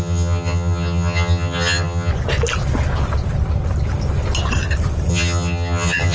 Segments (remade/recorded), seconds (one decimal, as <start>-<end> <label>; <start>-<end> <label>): 0.0-2.1 remade; 2.1-5.1 recorded; 5.1-6.1 remade